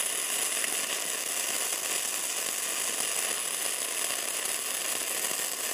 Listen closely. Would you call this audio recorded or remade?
recorded